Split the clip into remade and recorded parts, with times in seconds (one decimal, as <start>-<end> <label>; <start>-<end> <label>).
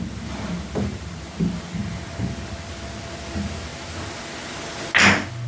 0.0-5.5 recorded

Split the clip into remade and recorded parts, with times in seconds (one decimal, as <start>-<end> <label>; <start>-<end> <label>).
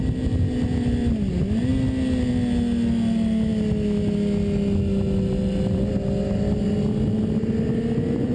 0.0-8.3 recorded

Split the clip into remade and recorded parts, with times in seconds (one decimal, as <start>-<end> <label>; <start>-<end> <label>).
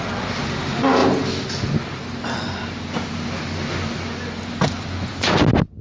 0.0-5.8 recorded